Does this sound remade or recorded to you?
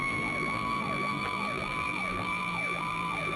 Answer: remade